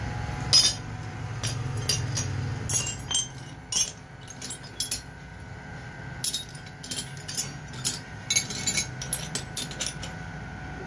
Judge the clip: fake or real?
real